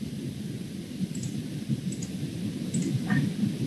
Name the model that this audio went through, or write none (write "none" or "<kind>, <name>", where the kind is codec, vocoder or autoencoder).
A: none